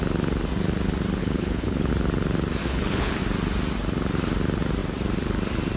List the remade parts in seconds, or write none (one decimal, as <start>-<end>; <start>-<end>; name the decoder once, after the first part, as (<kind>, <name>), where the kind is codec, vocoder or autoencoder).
1.2-1.9 (codec, HILCodec); 2.6-3.2

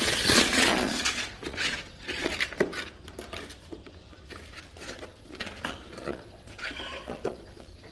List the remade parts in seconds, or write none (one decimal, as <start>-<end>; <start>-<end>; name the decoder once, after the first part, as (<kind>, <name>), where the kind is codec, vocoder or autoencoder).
0.0-2.3 (vocoder, Vocos); 4.8-7.9

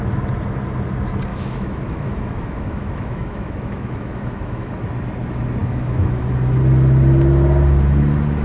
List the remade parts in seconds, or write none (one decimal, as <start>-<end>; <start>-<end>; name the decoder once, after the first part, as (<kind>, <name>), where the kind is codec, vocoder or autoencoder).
1.3-4.7 (autoencoder, DAC-VAE); 5.6-6.2

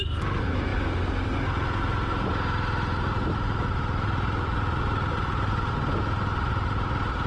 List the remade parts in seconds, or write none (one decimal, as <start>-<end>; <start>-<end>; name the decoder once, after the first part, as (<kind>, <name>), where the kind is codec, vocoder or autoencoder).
none

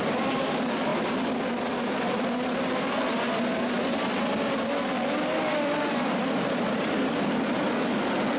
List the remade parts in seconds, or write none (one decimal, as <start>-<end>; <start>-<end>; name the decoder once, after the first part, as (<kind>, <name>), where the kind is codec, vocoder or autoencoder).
0.0-0.9 (vocoder, BigVGAN v2); 5.9-8.4

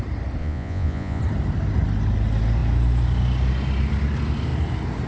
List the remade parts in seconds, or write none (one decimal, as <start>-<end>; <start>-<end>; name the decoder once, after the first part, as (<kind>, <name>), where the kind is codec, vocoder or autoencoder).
0.4-1.2 (vocoder, Vocos)

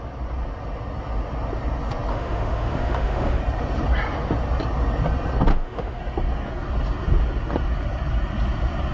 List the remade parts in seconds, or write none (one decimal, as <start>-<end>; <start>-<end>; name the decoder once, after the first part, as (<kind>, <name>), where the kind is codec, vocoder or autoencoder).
2.1-3.4 (autoencoder, DAC-VAE); 5.5-6.0